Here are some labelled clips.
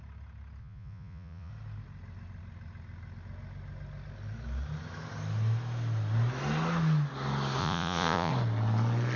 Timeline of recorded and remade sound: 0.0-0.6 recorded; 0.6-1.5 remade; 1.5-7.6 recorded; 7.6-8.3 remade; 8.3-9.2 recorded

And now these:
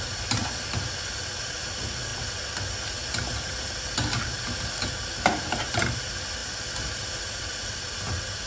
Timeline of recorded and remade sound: 0.0-8.5 recorded

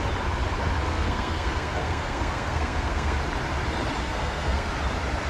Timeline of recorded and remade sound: 0.0-0.8 recorded; 0.8-3.2 remade; 3.2-4.0 recorded; 4.0-4.7 remade; 4.7-5.3 recorded

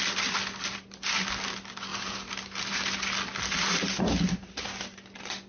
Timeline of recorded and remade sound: 0.0-5.5 recorded